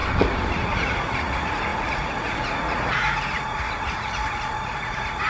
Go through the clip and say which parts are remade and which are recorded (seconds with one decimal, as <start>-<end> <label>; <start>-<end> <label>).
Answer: 0.0-0.5 recorded; 0.5-5.3 remade